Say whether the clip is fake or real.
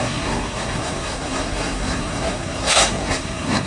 fake